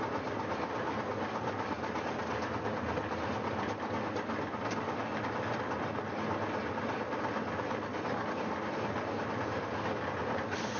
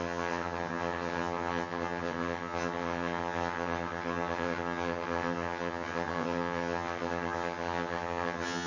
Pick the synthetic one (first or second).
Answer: second